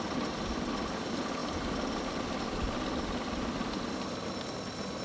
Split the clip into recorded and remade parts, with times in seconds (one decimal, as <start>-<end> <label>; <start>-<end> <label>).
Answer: 0.0-5.0 recorded